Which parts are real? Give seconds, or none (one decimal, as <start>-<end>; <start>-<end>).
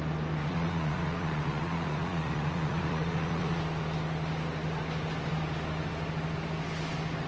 0.0-0.4; 3.6-7.3